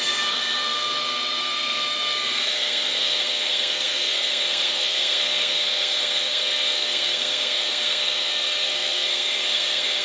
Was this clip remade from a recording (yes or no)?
yes